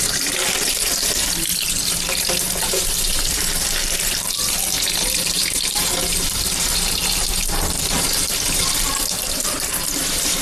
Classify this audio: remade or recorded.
remade